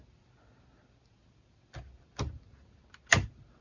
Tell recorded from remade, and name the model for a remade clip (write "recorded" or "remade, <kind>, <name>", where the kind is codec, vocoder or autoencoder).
recorded